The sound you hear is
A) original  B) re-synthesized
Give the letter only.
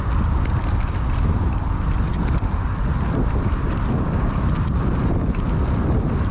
A